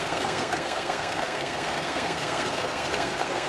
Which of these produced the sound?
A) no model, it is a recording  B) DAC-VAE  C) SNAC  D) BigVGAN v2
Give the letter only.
C